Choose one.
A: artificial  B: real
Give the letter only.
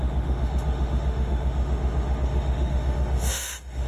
A